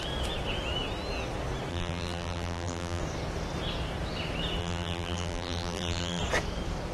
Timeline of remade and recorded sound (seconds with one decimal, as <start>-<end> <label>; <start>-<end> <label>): 0.0-1.7 recorded; 1.7-3.0 remade; 3.0-4.6 recorded; 4.6-6.2 remade; 6.2-6.9 recorded